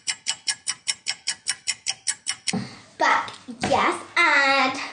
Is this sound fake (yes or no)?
no